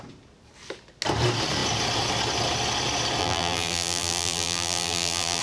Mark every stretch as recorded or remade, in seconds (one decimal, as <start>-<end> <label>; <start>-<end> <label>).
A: 0.0-3.2 recorded; 3.2-5.4 remade